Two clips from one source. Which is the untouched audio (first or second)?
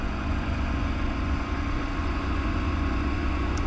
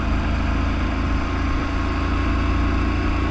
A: second